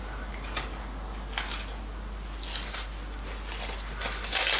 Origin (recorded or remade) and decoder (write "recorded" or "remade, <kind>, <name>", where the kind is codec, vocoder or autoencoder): recorded